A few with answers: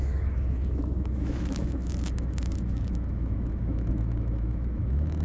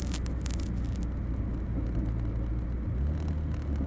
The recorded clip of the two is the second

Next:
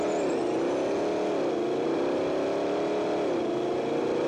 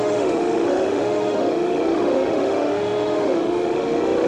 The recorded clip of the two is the first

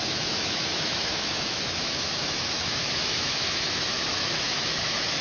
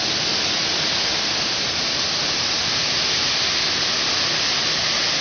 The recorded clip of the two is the second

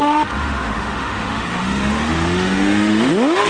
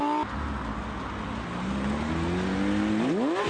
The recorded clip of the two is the second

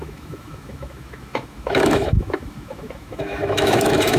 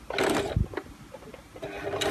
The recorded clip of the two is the second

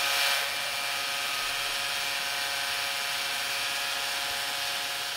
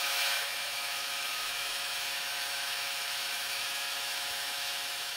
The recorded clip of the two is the first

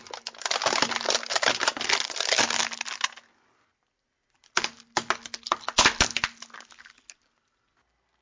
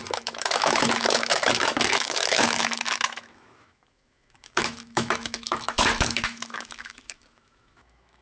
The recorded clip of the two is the first